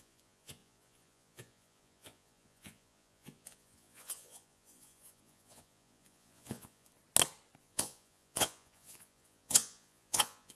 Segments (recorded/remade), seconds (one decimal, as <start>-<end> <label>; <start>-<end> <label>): 0.0-6.9 remade; 6.9-7.6 recorded; 7.6-10.6 remade